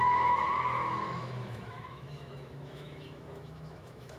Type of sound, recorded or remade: remade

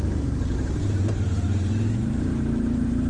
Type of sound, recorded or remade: remade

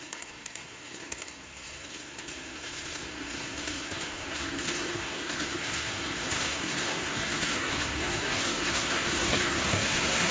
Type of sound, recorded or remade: remade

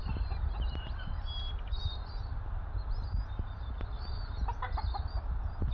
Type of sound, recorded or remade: recorded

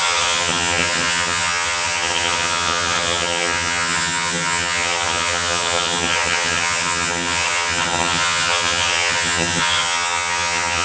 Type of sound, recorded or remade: remade